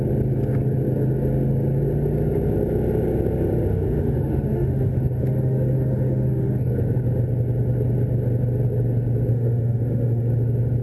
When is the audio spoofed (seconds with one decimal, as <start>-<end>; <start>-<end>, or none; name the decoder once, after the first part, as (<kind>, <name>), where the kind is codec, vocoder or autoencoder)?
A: 3.7-6.7 (autoencoder, DAC-VAE); 9.3-10.3